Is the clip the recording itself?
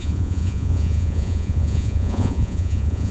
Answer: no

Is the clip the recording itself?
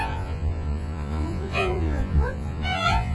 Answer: no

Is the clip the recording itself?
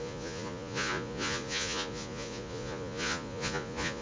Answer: no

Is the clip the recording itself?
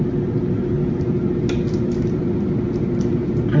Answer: yes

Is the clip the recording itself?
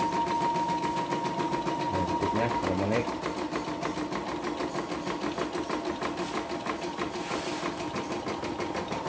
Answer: yes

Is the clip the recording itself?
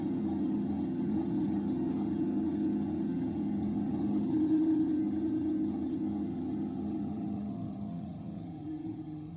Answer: no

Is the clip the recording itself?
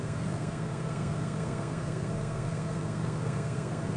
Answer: no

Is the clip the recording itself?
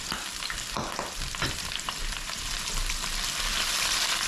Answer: no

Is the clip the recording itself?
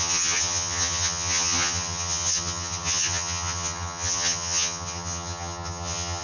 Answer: no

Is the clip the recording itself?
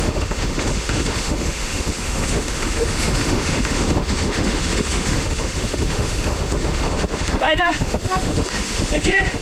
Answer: no